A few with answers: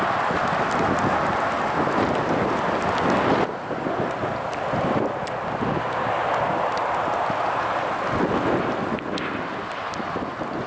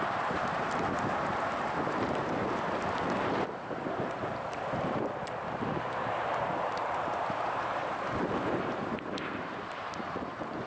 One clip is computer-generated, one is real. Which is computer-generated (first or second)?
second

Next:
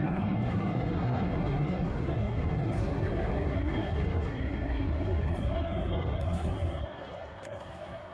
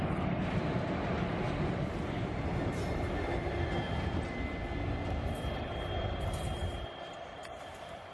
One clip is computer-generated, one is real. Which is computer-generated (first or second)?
first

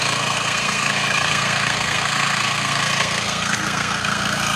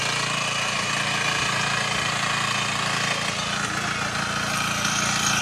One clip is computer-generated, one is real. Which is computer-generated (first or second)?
first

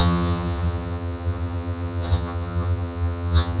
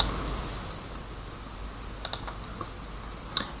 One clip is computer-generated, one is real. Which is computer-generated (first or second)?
first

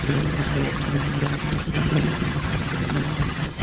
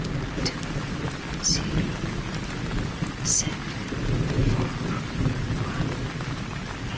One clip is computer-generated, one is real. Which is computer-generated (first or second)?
first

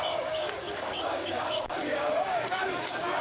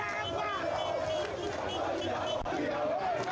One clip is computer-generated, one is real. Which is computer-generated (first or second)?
first